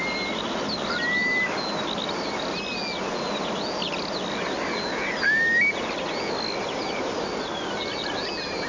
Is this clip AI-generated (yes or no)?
no